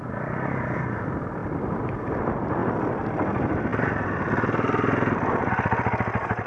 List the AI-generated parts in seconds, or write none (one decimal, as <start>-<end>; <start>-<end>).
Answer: none